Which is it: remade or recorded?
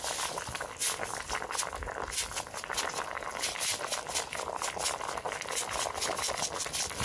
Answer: recorded